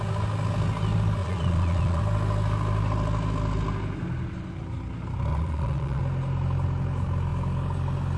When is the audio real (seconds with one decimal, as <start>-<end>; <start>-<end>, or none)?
0.0-1.2; 2.0-5.3; 6.0-8.2

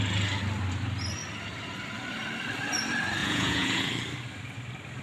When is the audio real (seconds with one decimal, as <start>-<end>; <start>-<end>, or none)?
0.0-3.2; 3.9-5.0